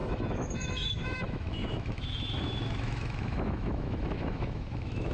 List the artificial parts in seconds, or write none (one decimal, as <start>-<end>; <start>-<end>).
0.0-5.1